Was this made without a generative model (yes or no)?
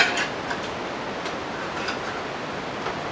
yes